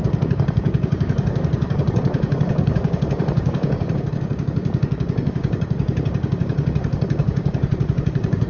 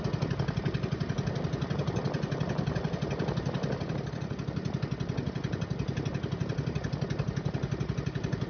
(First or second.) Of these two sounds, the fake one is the first